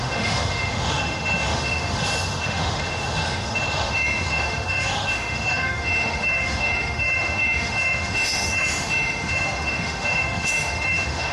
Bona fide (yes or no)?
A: no